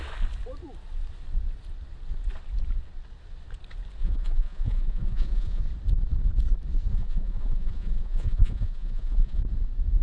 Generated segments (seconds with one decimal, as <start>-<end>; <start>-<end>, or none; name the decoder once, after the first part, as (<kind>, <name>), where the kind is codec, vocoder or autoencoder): 4.0-5.6 (vocoder, Vocos); 6.9-9.4